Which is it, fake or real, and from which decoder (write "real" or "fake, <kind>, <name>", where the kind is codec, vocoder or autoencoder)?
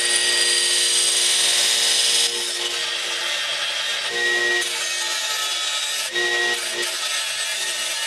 real